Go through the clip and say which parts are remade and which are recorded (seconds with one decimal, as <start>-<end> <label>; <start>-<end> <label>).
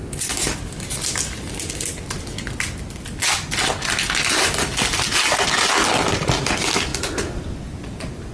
0.0-8.3 recorded